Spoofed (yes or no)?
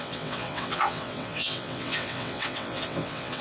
yes